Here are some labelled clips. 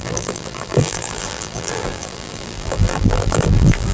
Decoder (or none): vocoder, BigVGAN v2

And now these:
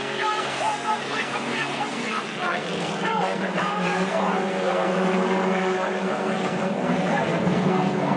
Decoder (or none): codec, SNAC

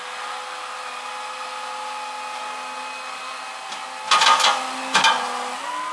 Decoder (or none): none